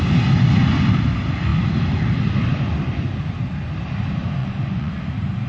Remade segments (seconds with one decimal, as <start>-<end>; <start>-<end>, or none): 4.4-5.0